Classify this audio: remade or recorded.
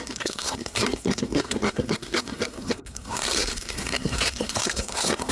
remade